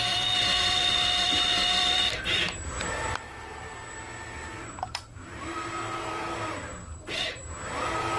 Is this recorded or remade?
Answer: remade